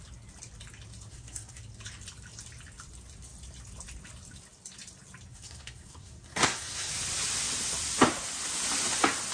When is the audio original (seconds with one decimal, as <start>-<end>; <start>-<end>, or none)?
0.0-1.1; 1.6-5.3; 6.9-9.3